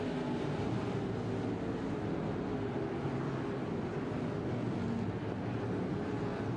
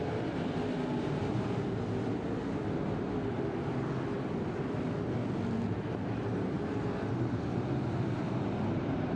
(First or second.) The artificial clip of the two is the second